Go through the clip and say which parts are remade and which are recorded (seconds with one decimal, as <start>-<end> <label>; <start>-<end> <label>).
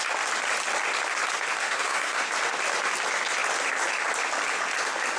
0.0-1.6 recorded; 1.6-2.3 remade; 2.3-5.2 recorded